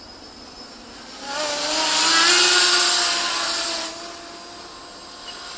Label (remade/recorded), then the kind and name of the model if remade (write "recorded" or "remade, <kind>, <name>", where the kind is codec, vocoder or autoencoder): recorded